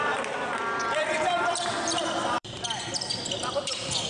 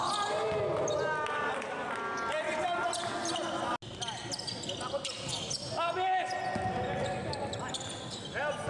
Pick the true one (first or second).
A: second